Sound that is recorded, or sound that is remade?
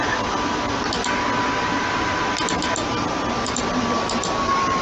recorded